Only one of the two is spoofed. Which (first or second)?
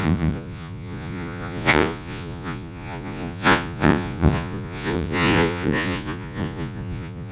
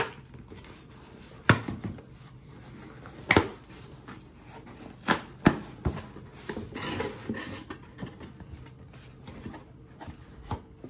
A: first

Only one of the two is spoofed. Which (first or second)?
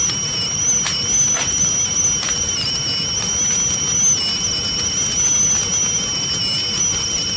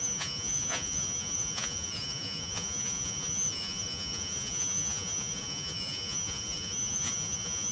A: second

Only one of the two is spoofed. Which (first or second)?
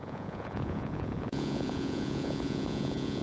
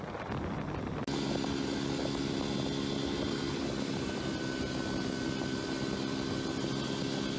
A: first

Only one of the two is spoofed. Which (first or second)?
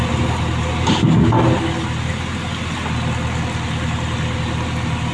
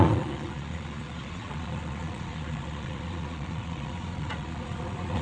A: second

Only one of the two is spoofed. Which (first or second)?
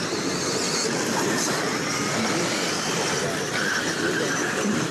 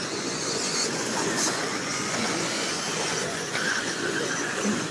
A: second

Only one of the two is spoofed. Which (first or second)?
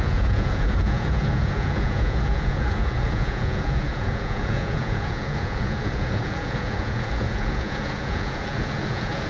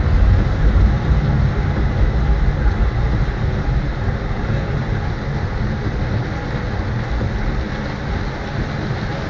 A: first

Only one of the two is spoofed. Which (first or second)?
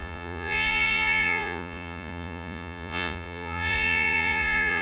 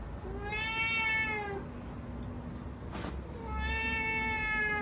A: first